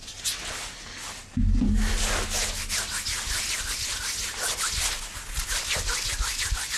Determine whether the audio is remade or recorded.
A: recorded